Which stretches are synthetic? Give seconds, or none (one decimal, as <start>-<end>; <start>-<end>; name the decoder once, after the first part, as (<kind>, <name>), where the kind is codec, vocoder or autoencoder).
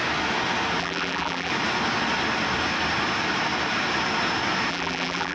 0.8-1.5 (vocoder, BigVGAN v2); 4.7-5.3